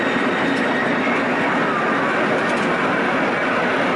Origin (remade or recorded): recorded